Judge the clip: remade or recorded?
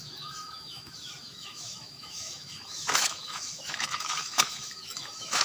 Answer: remade